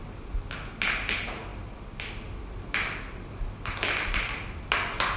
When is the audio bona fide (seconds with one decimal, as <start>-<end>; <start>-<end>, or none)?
0.0-5.2